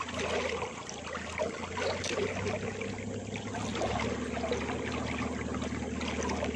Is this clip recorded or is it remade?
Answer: recorded